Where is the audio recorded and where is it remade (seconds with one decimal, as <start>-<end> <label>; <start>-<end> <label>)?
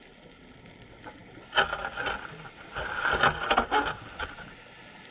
0.0-5.1 recorded